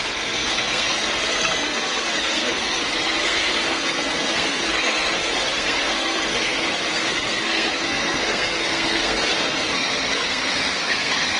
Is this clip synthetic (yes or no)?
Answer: yes